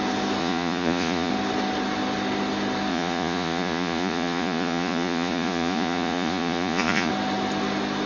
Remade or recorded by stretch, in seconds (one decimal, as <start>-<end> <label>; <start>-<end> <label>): 0.0-0.4 recorded; 0.4-1.3 remade; 1.3-2.9 recorded; 2.9-7.1 remade; 7.1-8.1 recorded